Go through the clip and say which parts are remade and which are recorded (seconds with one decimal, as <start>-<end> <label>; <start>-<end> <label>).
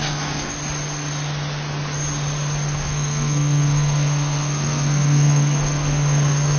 0.0-0.5 remade; 0.5-2.8 recorded; 2.8-6.6 remade